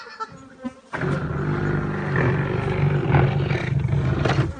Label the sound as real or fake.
real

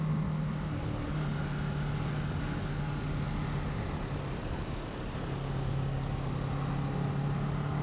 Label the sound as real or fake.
real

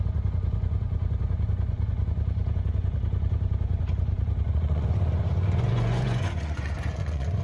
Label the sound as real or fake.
fake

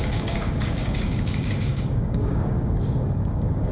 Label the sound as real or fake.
fake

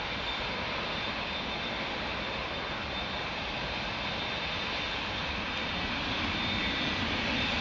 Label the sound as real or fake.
real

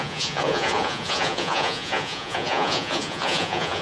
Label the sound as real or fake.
fake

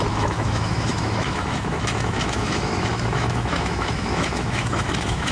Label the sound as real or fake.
fake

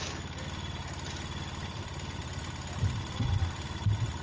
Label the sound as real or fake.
real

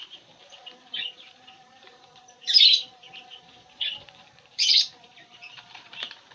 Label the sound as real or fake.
fake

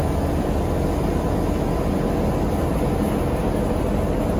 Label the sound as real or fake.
real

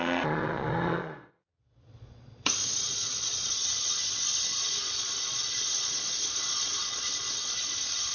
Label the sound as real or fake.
fake